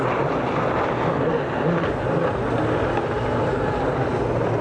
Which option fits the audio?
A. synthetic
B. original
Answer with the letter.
B